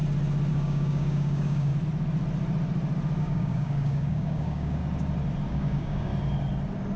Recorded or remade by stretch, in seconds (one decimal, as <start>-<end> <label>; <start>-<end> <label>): 0.0-0.5 recorded; 0.5-1.7 remade; 1.7-3.2 recorded; 3.2-4.8 remade; 4.8-5.5 recorded; 5.5-6.1 remade; 6.1-7.0 recorded